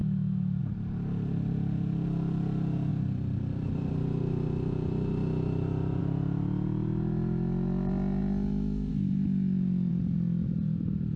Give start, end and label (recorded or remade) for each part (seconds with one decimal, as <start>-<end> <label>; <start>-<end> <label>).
0.0-2.9 recorded; 2.9-6.0 remade; 6.0-9.9 recorded; 9.9-11.2 remade